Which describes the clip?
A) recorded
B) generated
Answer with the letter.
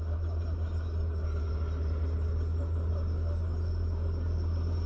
A